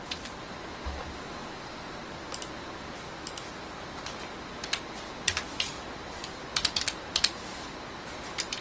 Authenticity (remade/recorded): recorded